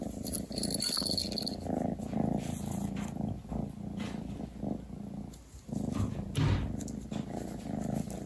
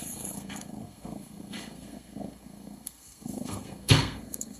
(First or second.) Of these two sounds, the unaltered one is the first